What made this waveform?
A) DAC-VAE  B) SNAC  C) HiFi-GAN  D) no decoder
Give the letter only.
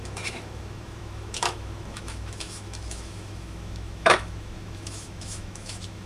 A